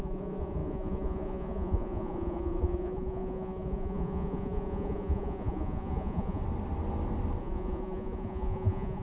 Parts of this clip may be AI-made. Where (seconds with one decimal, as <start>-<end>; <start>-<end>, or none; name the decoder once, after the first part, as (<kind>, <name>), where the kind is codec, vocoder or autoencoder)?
0.0-6.4 (vocoder, Vocos); 7.4-9.0

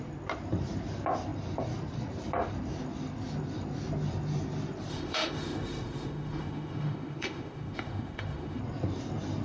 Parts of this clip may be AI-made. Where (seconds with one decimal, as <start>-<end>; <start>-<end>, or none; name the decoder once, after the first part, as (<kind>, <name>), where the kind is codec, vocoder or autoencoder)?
4.9-8.6 (autoencoder, DAC-VAE)